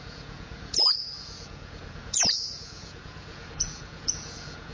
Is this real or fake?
fake